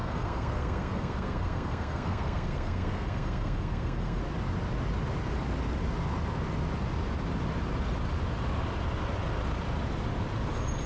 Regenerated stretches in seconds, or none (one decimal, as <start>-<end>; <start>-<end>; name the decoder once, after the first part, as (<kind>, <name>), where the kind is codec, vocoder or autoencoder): 0.0-4.2 (codec, SNAC)